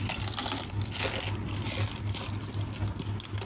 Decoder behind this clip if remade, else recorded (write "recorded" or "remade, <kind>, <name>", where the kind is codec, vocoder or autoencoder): recorded